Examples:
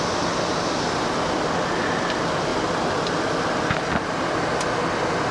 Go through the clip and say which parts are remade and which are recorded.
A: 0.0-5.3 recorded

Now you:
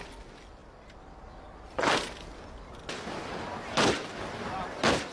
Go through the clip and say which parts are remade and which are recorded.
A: 0.0-5.1 recorded

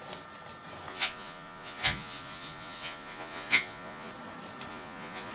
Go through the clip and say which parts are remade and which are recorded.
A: 0.0-0.9 recorded; 0.9-4.1 remade; 4.1-4.7 recorded; 4.7-5.3 remade

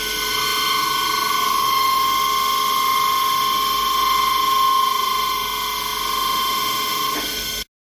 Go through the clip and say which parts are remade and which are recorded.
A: 0.0-7.8 recorded

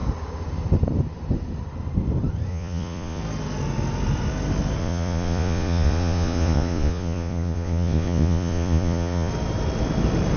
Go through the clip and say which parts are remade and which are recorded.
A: 0.0-2.5 recorded; 2.5-3.2 remade; 3.2-4.8 recorded; 4.8-9.3 remade; 9.3-10.4 recorded

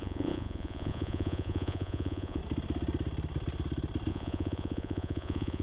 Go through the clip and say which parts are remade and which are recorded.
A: 0.0-2.4 remade; 2.4-4.1 recorded; 4.1-5.6 remade